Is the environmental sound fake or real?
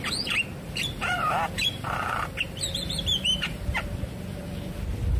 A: fake